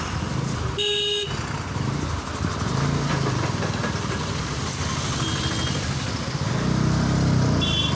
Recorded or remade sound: recorded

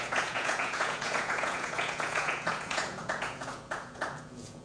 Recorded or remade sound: remade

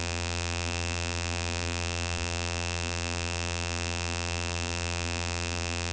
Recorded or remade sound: remade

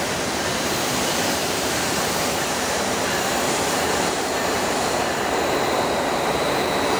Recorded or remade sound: remade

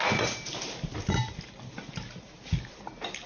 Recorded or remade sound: recorded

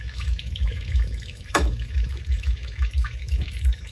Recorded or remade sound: remade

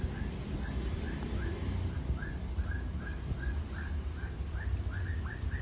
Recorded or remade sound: recorded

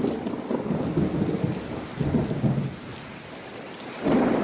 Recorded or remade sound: recorded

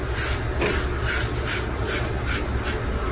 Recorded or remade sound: recorded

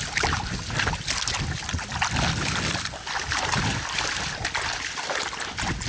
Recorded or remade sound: recorded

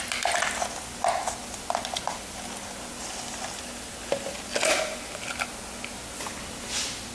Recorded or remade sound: recorded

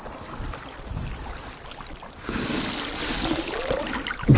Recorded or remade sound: recorded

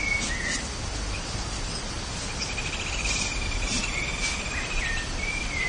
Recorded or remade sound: recorded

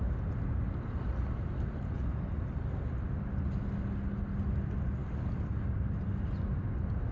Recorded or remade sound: recorded